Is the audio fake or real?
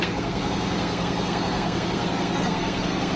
fake